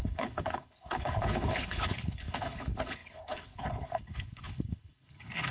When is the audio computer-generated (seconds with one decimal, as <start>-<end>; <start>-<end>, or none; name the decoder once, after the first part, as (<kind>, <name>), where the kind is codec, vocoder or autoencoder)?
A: 0.0-5.5 (codec, HILCodec)

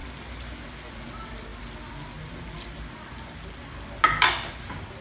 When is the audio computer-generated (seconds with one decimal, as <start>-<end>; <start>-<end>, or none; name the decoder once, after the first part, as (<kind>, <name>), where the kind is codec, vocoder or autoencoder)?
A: none

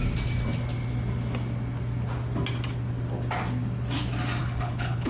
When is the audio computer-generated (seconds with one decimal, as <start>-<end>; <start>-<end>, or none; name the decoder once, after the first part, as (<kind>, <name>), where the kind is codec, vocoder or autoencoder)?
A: 4.4-5.1 (codec, HILCodec)

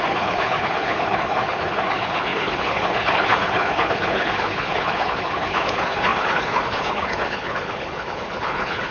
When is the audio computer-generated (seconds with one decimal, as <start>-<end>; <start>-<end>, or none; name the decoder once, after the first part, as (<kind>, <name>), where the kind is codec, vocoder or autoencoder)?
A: 0.0-8.9 (codec, HILCodec)